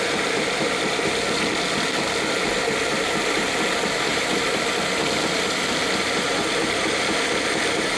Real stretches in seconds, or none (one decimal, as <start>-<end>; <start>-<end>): none